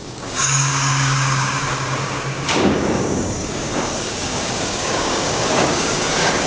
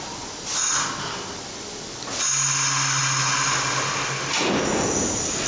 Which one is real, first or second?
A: second